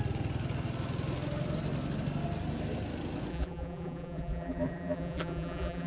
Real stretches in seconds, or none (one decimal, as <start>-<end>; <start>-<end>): 0.0-3.3